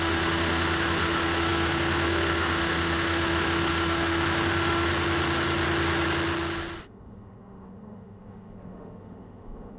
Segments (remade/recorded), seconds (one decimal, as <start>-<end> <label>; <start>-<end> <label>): 0.0-4.9 remade; 4.9-6.8 recorded; 6.8-9.8 remade